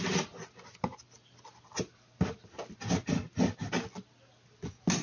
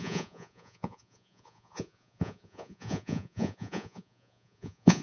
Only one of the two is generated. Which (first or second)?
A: second